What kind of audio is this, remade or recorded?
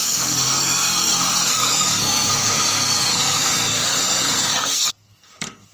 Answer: remade